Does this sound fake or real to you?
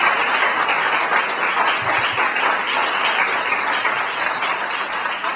real